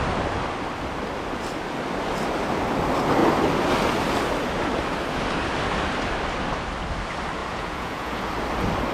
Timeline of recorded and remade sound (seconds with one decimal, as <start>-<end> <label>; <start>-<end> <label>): 0.0-7.4 recorded; 7.4-8.3 remade; 8.3-8.9 recorded